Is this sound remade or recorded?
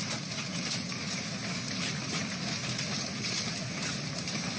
recorded